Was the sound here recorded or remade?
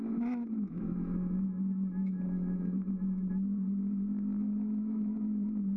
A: remade